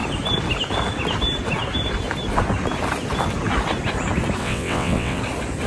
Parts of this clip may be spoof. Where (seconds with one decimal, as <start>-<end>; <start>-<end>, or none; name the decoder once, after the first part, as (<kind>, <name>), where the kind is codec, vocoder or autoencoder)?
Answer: 4.4-5.2 (vocoder, WaveNeXt)